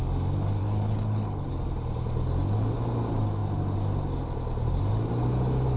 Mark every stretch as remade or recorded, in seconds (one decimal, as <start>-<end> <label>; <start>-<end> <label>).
0.0-0.6 recorded; 0.6-1.6 remade; 1.6-5.8 recorded